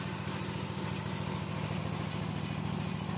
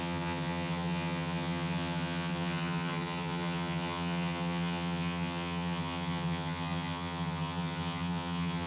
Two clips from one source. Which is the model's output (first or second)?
second